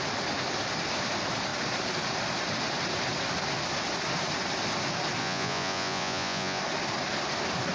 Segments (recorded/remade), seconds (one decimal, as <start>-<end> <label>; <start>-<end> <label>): 0.0-5.2 recorded; 5.2-6.6 remade; 6.6-7.7 recorded